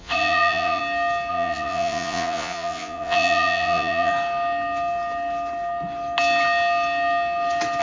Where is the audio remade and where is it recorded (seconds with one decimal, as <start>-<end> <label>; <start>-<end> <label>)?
0.0-0.8 remade; 0.8-1.3 recorded; 1.3-4.1 remade; 4.1-7.8 recorded